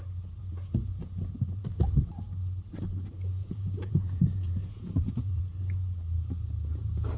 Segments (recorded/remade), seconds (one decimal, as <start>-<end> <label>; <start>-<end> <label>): 0.0-0.4 recorded; 0.4-1.6 remade; 1.6-3.4 recorded; 3.4-5.4 remade; 5.4-7.2 recorded